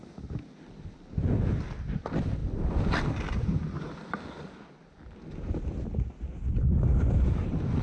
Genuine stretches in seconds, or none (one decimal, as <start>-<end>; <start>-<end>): 0.0-7.8